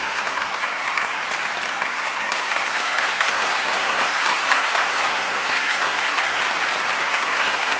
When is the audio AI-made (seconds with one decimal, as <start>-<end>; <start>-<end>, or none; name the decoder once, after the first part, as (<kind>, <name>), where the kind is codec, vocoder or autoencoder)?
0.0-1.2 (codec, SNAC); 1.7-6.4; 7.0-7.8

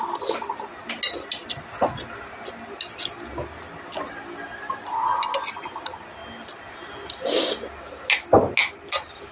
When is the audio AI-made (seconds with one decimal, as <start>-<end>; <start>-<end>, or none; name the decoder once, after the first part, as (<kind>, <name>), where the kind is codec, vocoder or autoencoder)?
none

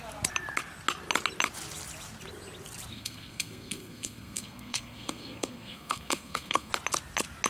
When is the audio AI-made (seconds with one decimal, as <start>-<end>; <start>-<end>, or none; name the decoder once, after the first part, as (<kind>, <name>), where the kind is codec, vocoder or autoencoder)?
2.9-6.7 (codec, SNAC)